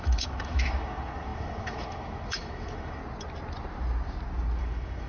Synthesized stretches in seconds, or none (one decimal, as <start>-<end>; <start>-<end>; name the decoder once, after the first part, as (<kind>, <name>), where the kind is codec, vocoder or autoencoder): 0.0-3.0 (autoencoder, DAC-VAE); 4.6-5.1